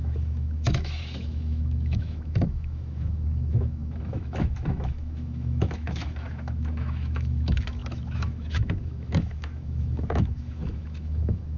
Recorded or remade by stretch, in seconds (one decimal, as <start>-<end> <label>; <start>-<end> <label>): 0.0-11.6 remade